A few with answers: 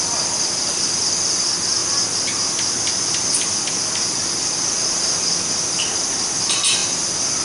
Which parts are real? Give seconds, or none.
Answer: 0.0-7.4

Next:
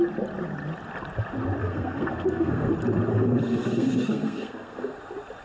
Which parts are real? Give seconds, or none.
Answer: 0.0-1.6; 2.7-3.1; 5.0-5.4